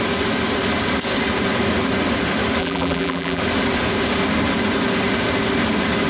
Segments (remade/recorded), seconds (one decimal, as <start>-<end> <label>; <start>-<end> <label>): 0.0-2.6 recorded; 2.6-3.4 remade; 3.4-6.1 recorded